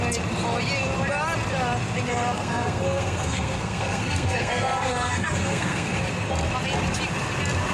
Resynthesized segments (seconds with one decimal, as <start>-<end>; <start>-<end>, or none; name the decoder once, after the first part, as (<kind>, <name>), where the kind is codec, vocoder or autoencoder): 2.1-6.0 (codec, SNAC)